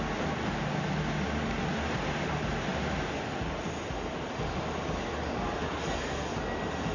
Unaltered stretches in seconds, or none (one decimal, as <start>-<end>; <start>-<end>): 0.0-6.9